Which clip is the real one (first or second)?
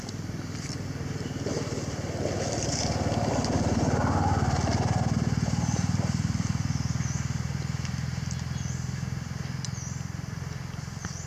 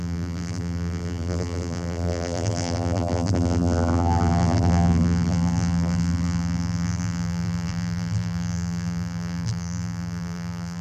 first